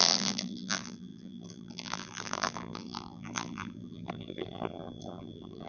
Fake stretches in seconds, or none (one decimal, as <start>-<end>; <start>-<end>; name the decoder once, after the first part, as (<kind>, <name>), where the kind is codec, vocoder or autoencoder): 0.0-5.7 (vocoder, BigVGAN v2)